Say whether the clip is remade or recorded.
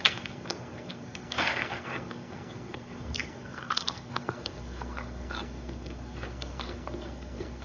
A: remade